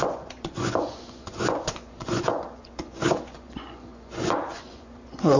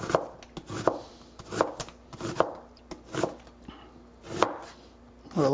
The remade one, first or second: first